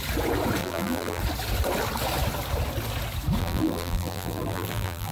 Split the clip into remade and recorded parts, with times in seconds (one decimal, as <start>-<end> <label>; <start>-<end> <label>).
0.0-0.6 recorded; 0.6-1.2 remade; 1.2-3.4 recorded; 3.4-5.1 remade